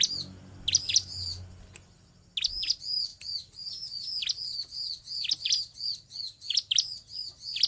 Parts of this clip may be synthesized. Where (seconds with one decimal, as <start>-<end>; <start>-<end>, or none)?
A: none